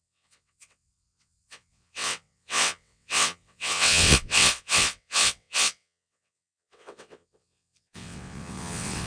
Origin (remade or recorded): remade